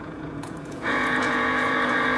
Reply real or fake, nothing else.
fake